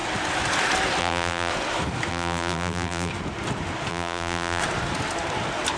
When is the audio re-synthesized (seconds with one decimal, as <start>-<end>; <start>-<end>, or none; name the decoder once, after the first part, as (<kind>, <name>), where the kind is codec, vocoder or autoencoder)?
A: 1.0-1.5 (vocoder, BigVGAN v2); 2.1-3.1; 3.9-4.6